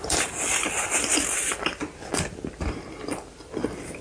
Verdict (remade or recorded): recorded